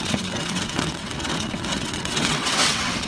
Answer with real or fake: fake